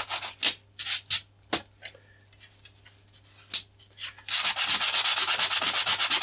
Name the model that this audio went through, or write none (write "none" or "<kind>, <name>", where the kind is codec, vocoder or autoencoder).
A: none